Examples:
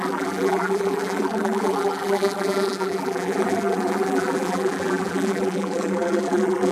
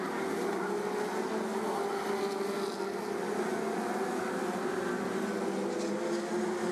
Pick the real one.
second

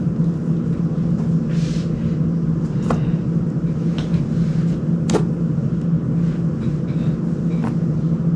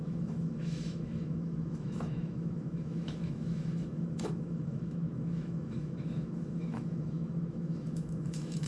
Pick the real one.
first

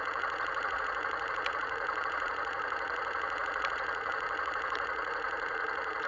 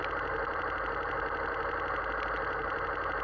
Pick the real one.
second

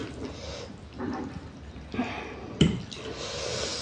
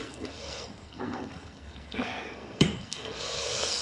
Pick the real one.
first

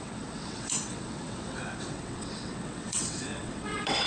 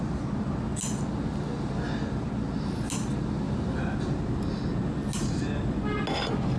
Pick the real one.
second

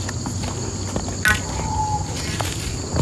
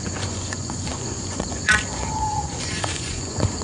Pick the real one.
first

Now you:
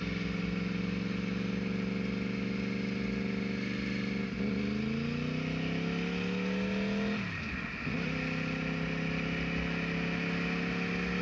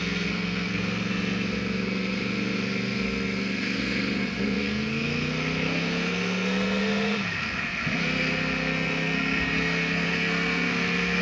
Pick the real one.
first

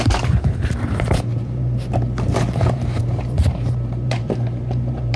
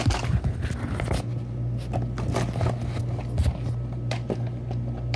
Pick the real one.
second